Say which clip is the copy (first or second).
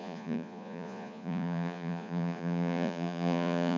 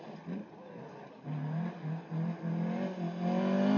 first